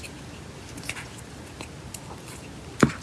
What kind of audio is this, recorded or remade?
recorded